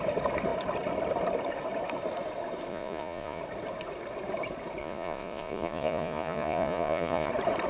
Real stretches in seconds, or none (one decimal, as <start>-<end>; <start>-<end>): 0.0-2.7; 3.4-4.8; 7.3-7.7